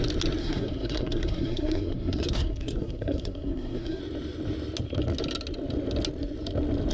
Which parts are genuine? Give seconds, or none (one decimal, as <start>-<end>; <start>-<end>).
0.0-0.4; 4.0-6.9